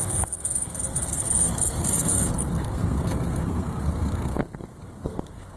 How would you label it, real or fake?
fake